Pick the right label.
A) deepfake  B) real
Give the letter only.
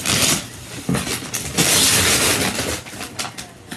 B